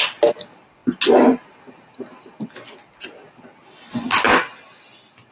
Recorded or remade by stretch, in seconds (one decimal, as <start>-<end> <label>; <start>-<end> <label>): 0.0-5.3 recorded